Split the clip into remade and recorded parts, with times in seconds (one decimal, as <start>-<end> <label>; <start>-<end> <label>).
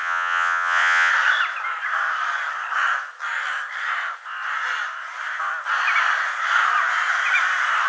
0.0-1.1 remade; 1.1-7.9 recorded